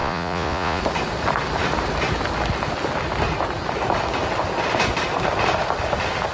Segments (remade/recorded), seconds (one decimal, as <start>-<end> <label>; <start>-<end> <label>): 0.0-0.8 remade; 0.8-6.3 recorded